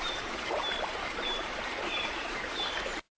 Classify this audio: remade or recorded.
remade